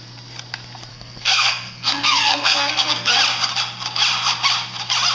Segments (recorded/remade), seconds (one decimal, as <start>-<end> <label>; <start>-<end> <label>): 0.0-0.9 recorded; 0.9-3.1 remade; 3.1-5.1 recorded

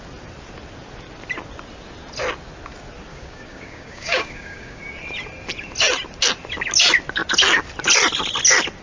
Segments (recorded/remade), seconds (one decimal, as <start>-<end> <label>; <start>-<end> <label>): 0.0-3.1 recorded; 3.1-4.8 remade; 4.8-8.8 recorded

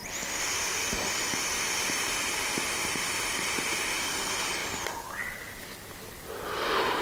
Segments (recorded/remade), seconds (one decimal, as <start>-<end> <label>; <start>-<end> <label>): 0.0-2.3 recorded; 2.3-4.6 remade; 4.6-7.0 recorded